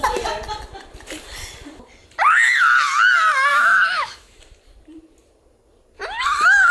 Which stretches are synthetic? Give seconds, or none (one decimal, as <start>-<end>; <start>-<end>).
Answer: 3.5-4.4